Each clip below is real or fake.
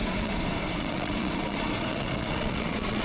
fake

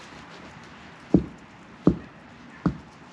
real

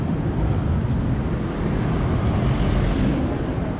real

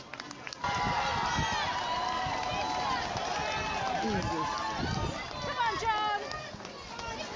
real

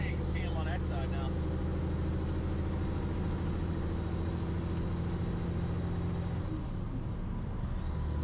real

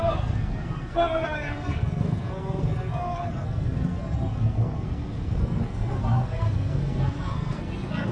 fake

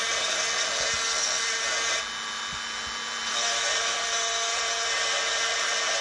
real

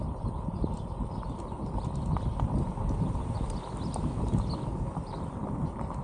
real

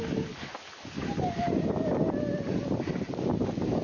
real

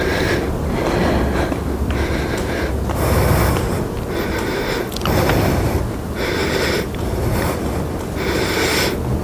real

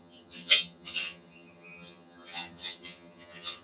fake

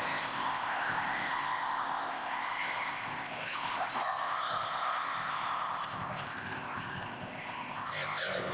fake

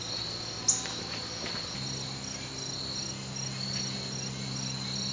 real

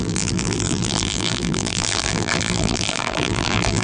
fake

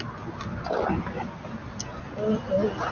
real